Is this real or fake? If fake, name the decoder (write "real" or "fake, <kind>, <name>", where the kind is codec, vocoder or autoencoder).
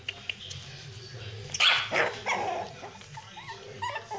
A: real